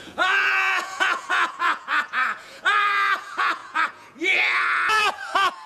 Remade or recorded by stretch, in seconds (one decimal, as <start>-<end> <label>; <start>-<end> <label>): 0.0-5.7 remade

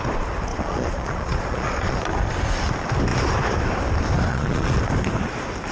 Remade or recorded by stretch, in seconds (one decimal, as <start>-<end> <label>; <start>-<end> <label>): 0.0-0.5 recorded; 0.5-2.0 remade; 2.0-4.3 recorded; 4.3-4.8 remade; 4.8-5.7 recorded

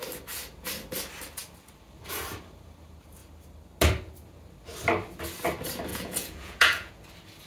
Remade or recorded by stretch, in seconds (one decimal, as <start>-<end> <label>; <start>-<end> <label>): 0.0-5.9 recorded; 5.9-6.9 remade; 6.9-7.5 recorded

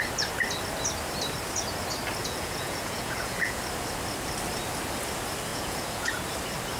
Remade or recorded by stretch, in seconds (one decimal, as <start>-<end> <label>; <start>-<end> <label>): 0.0-2.2 recorded; 2.2-3.6 remade; 3.6-5.5 recorded; 5.5-6.2 remade; 6.2-6.8 recorded

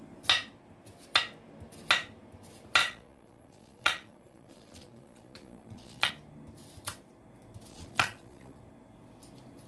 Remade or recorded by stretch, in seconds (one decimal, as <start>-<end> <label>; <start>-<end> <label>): 0.0-2.8 recorded; 2.8-6.1 remade; 6.1-7.7 recorded; 7.7-8.6 remade; 8.6-9.7 recorded

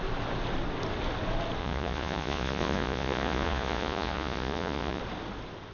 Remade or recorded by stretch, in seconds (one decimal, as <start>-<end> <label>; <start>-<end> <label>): 0.0-1.6 recorded; 1.6-5.0 remade; 5.0-5.7 recorded

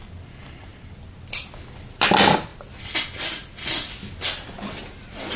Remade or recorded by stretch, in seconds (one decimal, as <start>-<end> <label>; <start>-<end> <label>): 0.0-5.4 recorded

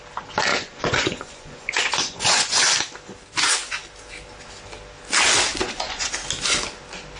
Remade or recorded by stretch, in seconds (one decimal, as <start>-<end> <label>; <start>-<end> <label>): 0.0-0.5 recorded; 0.5-2.6 remade; 2.6-5.5 recorded; 5.5-6.1 remade; 6.1-7.2 recorded